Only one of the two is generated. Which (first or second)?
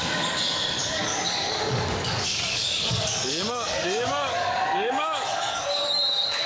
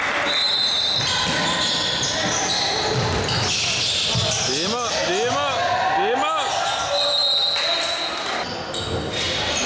first